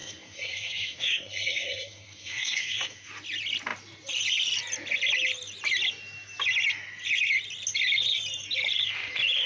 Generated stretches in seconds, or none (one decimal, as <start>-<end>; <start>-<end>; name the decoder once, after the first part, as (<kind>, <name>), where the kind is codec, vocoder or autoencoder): 0.0-3.1 (codec, SNAC)